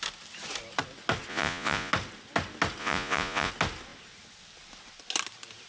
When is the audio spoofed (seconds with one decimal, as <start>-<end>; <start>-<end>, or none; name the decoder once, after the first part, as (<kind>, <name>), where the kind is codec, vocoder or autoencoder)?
1.3-1.9 (vocoder, Vocos); 2.8-3.5